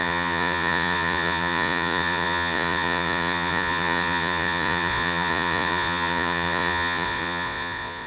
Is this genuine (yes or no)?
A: no